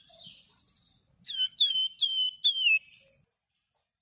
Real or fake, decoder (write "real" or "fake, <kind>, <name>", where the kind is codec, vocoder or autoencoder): real